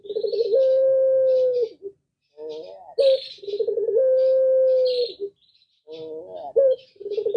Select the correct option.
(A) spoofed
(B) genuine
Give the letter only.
B